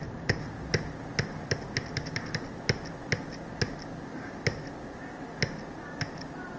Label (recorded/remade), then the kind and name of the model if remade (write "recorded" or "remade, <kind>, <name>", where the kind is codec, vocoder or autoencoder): recorded